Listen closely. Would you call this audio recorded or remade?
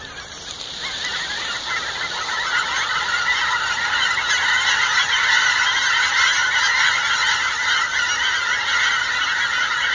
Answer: recorded